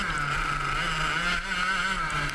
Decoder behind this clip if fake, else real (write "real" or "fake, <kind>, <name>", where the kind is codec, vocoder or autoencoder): real